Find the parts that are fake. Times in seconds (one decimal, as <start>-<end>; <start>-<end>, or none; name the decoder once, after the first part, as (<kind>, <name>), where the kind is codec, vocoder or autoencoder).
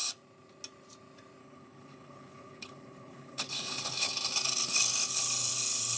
1.4-4.1 (codec, HILCodec)